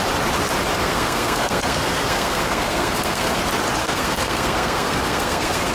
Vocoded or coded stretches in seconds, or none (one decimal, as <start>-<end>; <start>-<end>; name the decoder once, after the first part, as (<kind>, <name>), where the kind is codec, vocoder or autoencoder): 0.8-3.4 (codec, SNAC); 3.8-5.7